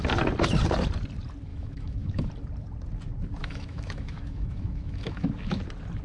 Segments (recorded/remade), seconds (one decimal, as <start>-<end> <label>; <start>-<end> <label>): 0.0-1.5 recorded; 1.5-2.3 remade; 2.3-3.4 recorded; 3.4-5.6 remade; 5.6-6.0 recorded